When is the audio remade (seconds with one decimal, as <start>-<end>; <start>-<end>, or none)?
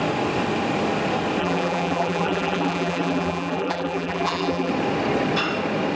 1.4-4.7